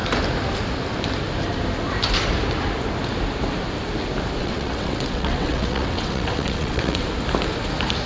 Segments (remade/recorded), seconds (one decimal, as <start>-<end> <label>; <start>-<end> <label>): 0.0-4.4 recorded; 4.4-7.1 remade; 7.1-8.1 recorded